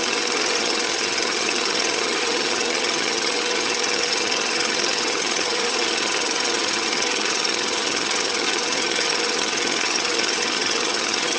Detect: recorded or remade remade